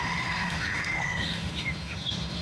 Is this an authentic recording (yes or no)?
no